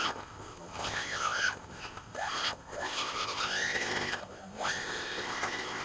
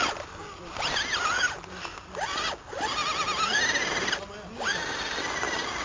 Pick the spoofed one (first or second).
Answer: first